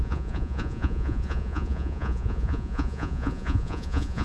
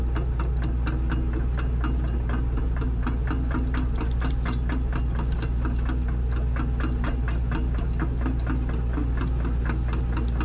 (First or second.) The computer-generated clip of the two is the first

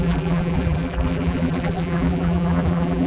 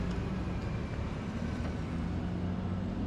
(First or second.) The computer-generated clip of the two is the first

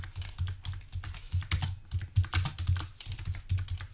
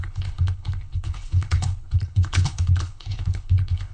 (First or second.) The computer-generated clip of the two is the second